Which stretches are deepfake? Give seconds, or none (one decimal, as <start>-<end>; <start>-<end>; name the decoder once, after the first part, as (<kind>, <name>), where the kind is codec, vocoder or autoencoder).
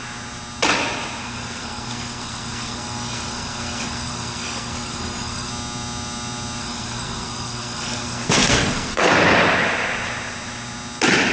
1.2-5.5 (codec, SNAC); 6.6-9.1